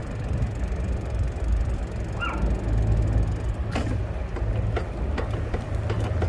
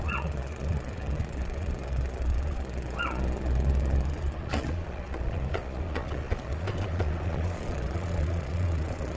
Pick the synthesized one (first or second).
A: second